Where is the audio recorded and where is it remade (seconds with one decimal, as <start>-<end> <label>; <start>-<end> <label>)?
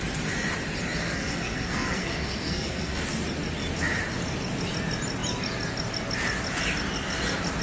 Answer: 0.0-1.0 recorded; 1.0-3.0 remade; 3.0-7.6 recorded